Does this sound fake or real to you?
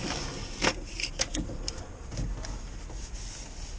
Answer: real